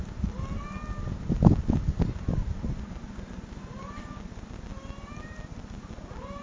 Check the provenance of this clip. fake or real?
real